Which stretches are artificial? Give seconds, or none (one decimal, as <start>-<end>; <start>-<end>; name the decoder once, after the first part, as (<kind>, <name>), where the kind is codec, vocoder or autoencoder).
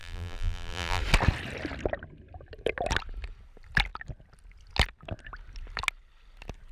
0.0-1.0 (vocoder, BigVGAN v2)